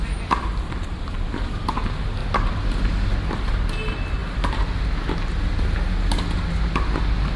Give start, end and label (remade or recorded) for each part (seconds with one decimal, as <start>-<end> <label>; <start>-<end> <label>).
0.0-7.4 recorded